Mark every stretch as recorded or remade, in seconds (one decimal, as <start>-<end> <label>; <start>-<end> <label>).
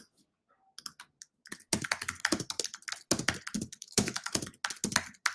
0.0-3.8 recorded; 3.8-4.3 remade; 4.3-5.3 recorded